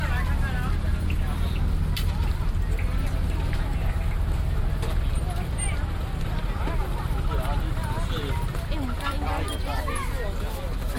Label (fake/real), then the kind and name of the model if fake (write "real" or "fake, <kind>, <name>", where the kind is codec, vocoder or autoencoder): real